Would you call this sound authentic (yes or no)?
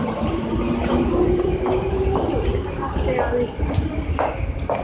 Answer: no